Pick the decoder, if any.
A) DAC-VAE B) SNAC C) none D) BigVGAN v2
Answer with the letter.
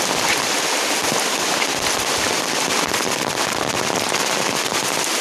C